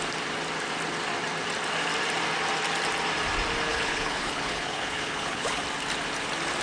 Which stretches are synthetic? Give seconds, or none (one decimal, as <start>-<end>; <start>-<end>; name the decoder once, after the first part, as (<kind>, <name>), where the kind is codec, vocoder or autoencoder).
3.7-5.6 (codec, HILCodec)